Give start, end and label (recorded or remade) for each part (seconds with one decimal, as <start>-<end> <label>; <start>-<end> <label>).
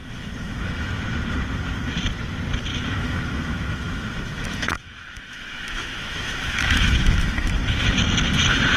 0.0-1.0 remade; 1.0-2.7 recorded; 2.7-7.5 remade; 7.5-8.8 recorded